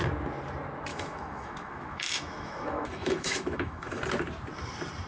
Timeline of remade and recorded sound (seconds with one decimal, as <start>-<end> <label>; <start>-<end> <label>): 0.0-0.9 recorded; 0.9-4.0 remade; 4.0-5.1 recorded